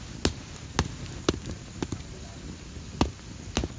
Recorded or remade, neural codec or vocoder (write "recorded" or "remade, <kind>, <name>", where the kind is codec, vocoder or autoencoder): recorded